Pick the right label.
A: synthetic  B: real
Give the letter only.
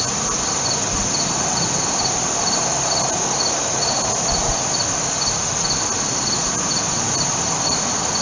B